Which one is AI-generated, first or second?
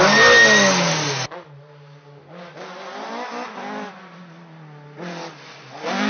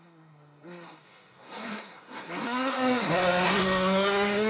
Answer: second